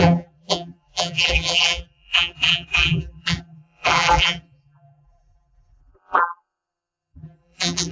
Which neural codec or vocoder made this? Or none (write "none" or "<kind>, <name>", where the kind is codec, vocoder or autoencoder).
vocoder, BigVGAN v2